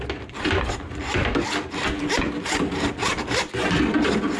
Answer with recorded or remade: recorded